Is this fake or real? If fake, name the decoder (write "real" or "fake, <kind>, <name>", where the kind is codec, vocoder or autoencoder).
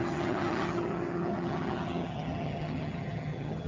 fake, vocoder, HiFi-GAN